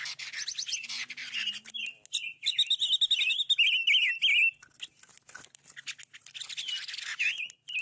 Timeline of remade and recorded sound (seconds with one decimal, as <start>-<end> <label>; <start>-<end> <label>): 0.0-7.8 recorded